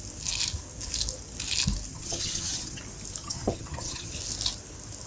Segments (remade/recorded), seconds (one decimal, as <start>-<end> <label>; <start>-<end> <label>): 0.0-1.9 recorded; 1.9-2.8 remade; 2.8-3.2 recorded; 3.2-4.1 remade; 4.1-5.1 recorded